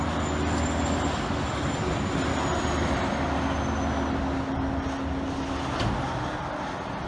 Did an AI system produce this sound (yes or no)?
no